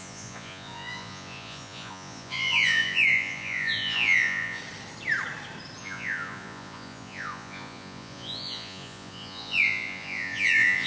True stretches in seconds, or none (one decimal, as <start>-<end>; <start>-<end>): 4.6-5.8